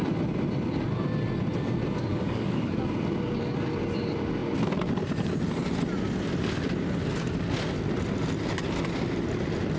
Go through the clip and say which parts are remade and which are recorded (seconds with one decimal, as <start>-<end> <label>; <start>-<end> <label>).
0.0-2.1 recorded; 2.1-2.7 remade; 2.7-9.8 recorded